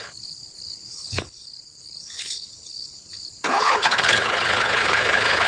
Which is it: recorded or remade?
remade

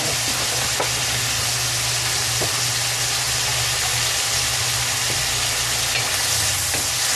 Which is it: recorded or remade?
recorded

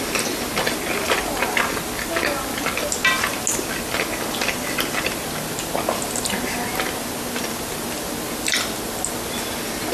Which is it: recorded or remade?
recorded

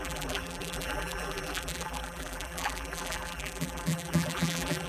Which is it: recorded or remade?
remade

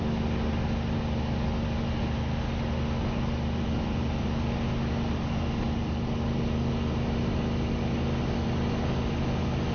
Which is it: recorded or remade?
recorded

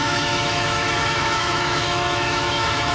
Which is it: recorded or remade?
remade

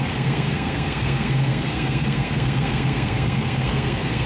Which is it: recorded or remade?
remade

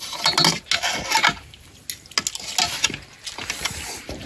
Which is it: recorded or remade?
recorded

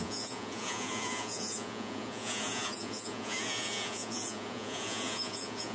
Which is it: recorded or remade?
remade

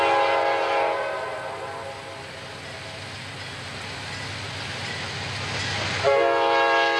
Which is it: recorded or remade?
recorded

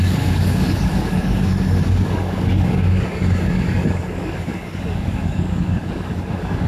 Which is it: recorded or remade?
remade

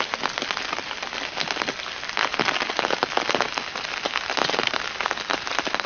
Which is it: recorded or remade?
recorded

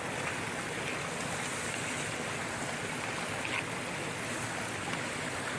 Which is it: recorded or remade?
recorded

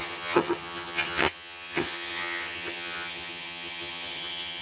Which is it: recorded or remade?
remade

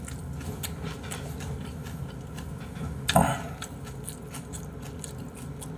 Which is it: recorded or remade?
recorded